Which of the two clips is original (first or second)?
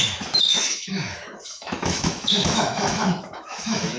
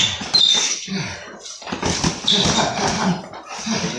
second